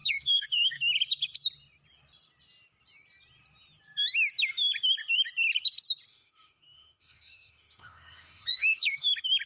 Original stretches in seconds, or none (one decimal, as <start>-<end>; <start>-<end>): 0.8-6.1; 9.1-9.5